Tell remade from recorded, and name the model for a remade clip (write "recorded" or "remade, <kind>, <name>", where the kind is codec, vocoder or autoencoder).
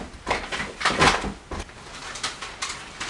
recorded